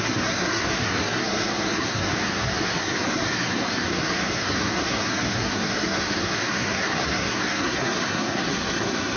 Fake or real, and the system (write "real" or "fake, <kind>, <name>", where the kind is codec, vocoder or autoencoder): fake, codec, SNAC